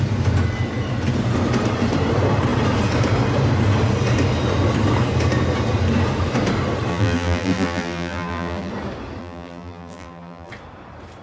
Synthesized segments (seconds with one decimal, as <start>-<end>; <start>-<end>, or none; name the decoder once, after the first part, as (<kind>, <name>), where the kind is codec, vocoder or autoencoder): 6.9-8.7 (vocoder, BigVGAN v2); 9.2-10.5